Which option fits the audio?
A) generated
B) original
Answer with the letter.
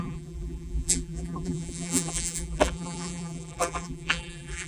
A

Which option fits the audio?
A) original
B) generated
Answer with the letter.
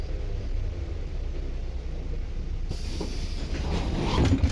A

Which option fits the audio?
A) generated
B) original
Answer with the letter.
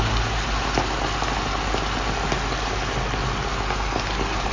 B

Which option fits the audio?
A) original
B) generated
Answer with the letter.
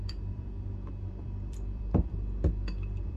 B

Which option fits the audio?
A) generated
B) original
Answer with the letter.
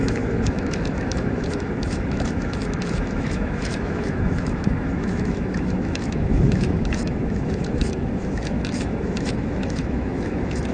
A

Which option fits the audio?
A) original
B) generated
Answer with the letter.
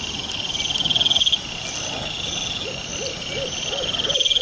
A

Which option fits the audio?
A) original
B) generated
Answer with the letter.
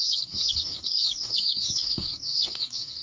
B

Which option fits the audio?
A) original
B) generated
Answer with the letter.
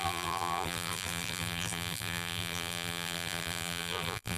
B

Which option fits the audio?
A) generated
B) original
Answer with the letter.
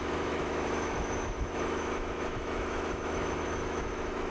A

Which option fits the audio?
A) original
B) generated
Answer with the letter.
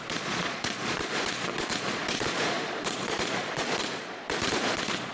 B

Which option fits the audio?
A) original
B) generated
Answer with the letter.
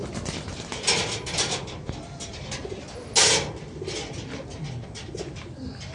A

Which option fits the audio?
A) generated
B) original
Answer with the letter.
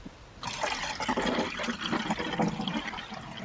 B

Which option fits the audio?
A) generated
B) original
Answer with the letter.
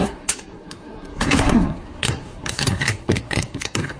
A